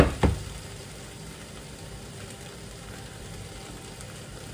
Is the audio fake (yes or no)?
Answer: yes